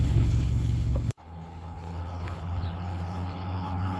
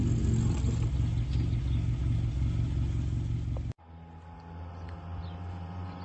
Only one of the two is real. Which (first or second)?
second